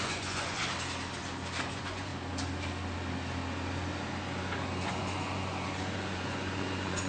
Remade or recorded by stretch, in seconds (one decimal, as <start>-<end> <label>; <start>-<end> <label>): 0.0-0.6 remade; 0.6-1.7 recorded; 1.7-2.1 remade; 2.1-4.9 recorded; 4.9-7.1 remade